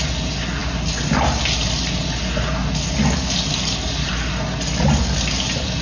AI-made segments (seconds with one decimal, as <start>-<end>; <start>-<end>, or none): none